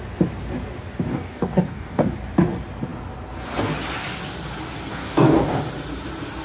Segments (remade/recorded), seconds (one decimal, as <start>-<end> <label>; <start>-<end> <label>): 0.0-1.1 recorded; 1.1-2.1 remade; 2.1-4.9 recorded; 4.9-5.6 remade; 5.6-6.4 recorded